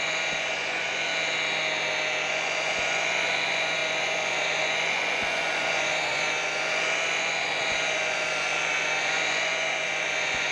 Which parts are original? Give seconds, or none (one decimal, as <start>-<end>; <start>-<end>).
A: 1.1-2.3